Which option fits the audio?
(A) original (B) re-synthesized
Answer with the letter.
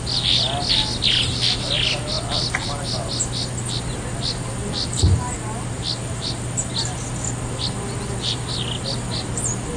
A